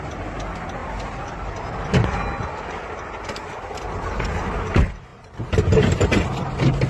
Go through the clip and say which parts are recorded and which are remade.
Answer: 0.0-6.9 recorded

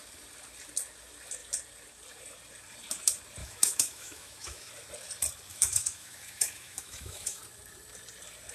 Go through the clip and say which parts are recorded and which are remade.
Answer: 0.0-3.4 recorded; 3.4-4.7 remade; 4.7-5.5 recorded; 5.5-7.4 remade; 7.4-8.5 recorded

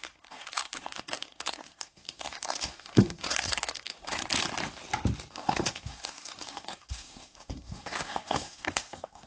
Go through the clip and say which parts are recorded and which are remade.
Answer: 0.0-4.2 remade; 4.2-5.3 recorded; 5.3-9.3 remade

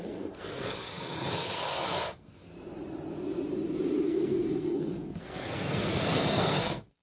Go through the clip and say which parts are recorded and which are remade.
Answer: 0.0-2.5 remade; 2.5-4.0 recorded; 4.0-7.0 remade

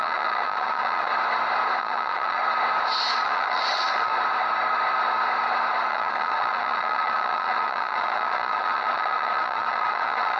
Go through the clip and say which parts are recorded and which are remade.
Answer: 0.0-1.1 remade; 1.1-1.8 recorded; 1.8-2.4 remade; 2.4-3.1 recorded; 3.1-4.1 remade; 4.1-5.9 recorded; 5.9-10.4 remade